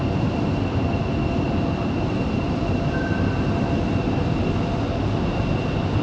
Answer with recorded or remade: recorded